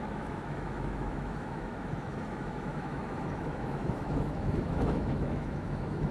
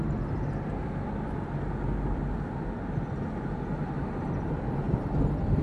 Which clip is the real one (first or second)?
second